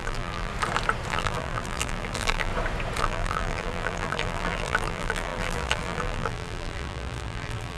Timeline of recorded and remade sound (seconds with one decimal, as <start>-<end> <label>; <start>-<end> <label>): 0.0-0.5 remade; 0.5-1.1 recorded; 1.1-2.5 remade; 2.5-3.0 recorded; 3.0-7.8 remade